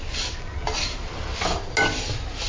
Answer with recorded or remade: recorded